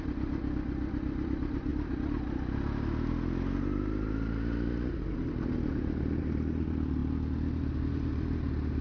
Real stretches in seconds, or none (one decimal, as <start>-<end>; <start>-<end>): 0.0-8.8